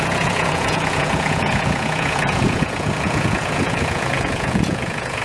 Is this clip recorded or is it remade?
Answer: remade